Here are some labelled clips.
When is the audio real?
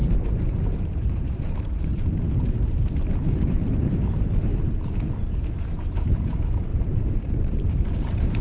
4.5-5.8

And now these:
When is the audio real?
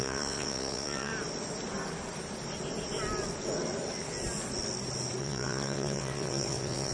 1.1-5.2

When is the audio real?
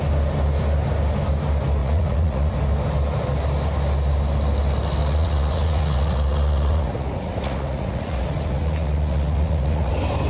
0.0-1.8; 2.5-5.0; 9.9-10.3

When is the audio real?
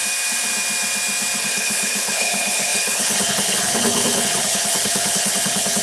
0.0-1.4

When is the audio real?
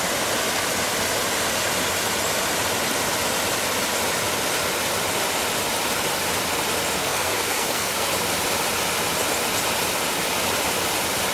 0.0-7.0; 8.1-11.3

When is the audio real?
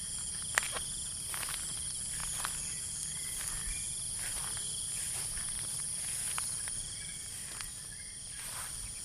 0.0-9.0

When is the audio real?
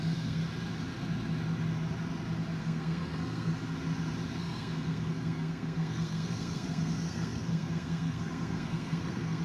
0.4-2.6; 3.5-4.4